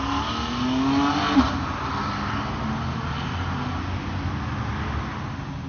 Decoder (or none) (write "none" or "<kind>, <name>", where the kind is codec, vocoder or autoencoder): none